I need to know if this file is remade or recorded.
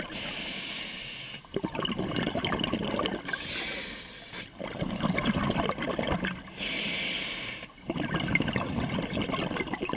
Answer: recorded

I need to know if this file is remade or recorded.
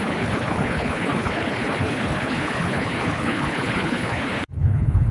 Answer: remade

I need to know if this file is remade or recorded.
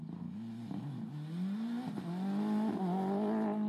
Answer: recorded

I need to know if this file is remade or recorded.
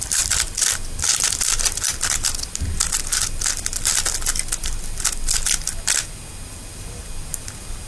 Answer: recorded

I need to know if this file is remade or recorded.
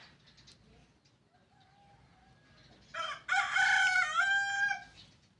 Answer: recorded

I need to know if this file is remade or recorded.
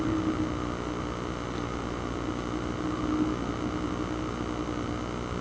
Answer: recorded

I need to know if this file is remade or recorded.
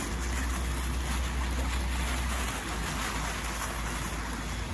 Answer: recorded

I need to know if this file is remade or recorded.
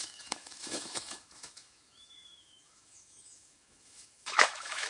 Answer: remade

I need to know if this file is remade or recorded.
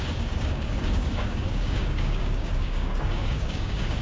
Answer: remade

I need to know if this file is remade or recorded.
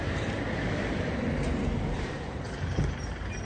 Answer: remade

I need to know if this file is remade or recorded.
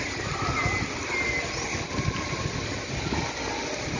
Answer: recorded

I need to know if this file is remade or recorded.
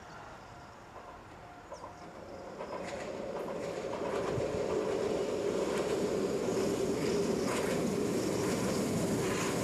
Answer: recorded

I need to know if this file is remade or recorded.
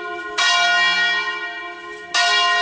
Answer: recorded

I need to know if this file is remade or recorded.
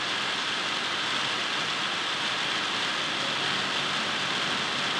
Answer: recorded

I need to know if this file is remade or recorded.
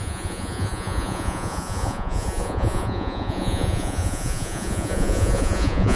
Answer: remade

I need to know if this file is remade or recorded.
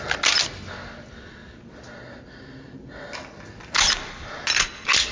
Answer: recorded